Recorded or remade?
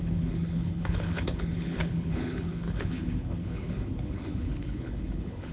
remade